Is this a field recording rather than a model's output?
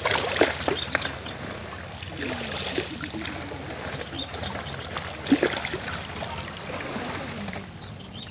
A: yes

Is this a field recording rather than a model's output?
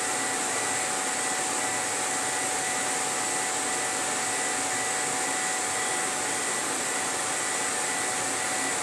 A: yes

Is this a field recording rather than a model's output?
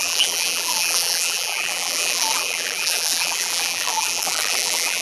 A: no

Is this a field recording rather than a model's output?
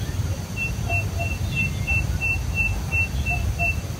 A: yes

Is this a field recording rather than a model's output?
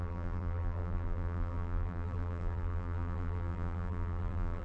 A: no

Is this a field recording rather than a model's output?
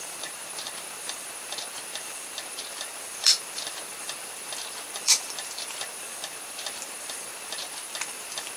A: no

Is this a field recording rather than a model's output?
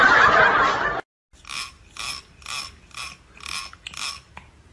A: yes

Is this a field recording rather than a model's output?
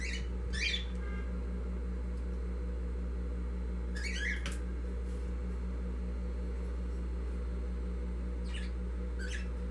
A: yes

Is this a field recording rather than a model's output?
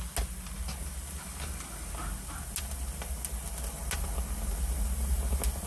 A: yes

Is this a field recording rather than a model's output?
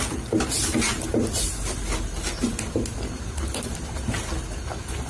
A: yes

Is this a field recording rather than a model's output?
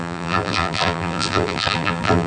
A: no